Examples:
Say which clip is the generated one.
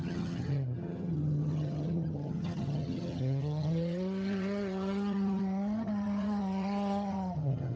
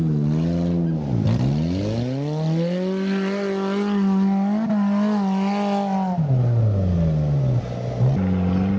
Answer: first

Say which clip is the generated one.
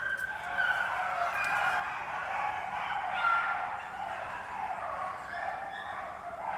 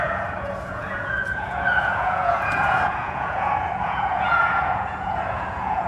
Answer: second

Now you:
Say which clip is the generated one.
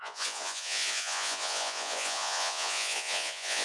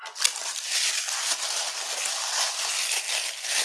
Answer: first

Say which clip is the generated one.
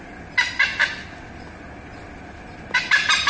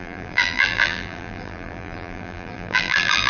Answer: second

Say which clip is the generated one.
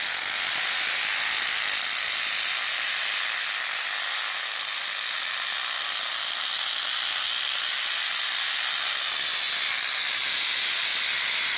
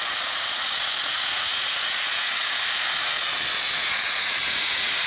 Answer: second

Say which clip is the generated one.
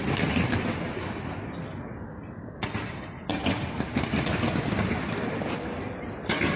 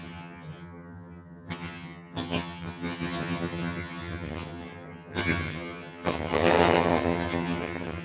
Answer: second